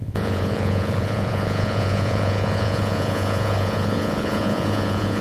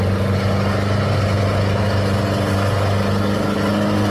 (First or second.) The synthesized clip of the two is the first